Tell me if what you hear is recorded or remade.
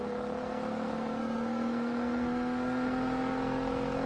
remade